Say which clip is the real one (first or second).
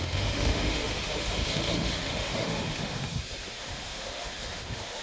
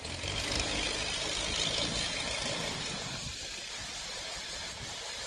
second